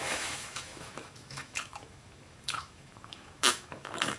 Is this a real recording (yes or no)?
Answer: no